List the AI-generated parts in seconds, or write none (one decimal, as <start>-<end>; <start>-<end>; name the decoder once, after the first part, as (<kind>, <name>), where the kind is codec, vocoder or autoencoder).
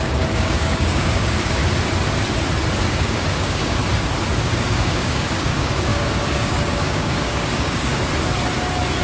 0.0-1.6 (codec, DAC); 2.8-3.8; 4.4-7.9